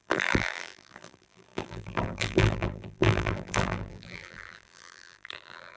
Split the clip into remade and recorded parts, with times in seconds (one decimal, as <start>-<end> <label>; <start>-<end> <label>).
0.0-5.8 remade